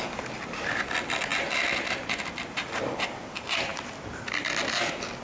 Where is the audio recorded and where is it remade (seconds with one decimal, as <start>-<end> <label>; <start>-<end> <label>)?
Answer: 0.0-5.2 recorded